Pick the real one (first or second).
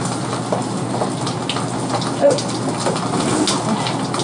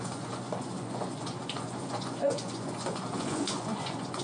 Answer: first